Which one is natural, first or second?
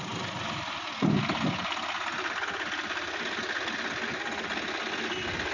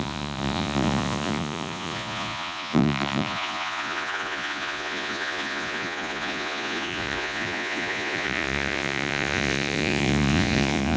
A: first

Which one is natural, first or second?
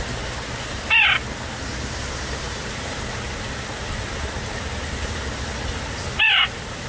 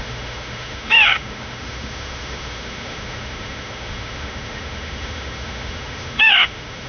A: first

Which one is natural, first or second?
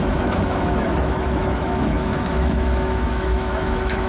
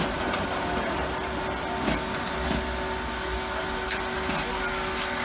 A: second